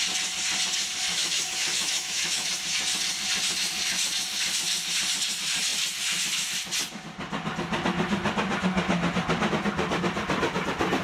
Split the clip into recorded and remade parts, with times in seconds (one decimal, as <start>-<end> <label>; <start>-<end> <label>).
0.0-1.1 recorded; 1.1-2.5 remade; 2.5-11.0 recorded